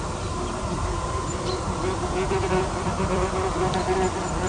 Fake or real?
fake